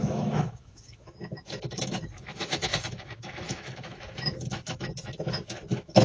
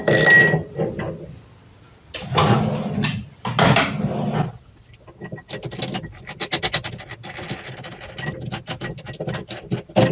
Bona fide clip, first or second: second